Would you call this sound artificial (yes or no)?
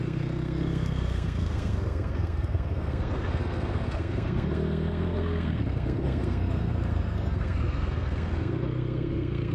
yes